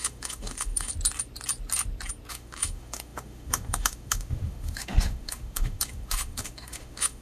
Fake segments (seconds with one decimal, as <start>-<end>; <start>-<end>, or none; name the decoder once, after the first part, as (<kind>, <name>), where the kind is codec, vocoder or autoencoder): 0.0-0.9 (autoencoder, DAC-VAE); 2.3-7.2